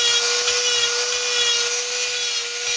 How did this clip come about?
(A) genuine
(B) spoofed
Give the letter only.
A